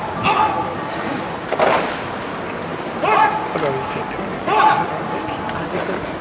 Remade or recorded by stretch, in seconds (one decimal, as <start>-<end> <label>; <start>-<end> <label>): 0.0-6.2 recorded

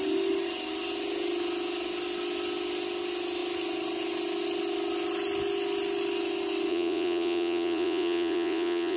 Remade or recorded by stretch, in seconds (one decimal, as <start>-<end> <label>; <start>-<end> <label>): 0.0-6.7 recorded; 6.7-9.0 remade

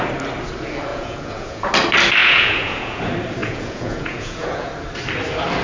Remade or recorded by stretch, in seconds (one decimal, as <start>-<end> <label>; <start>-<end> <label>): 0.0-0.9 recorded; 0.9-1.7 remade; 1.7-2.2 recorded; 2.2-3.0 remade; 3.0-3.4 recorded; 3.4-4.7 remade; 4.7-5.6 recorded